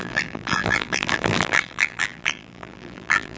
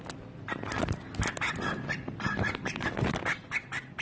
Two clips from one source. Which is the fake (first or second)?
first